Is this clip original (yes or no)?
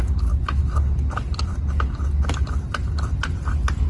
yes